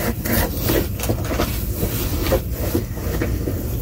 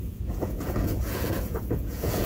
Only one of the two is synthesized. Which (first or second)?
second